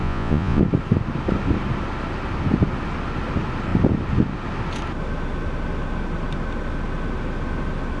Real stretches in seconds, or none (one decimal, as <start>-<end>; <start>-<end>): 0.6-8.0